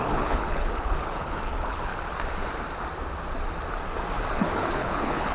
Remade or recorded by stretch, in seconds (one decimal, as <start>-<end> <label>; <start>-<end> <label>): 0.0-1.9 remade; 1.9-4.3 recorded; 4.3-5.3 remade